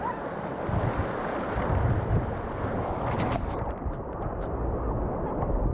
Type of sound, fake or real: real